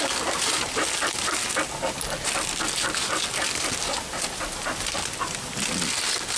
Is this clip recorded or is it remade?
recorded